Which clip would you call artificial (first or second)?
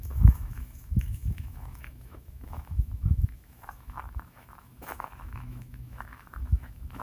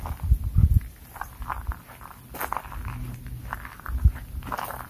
first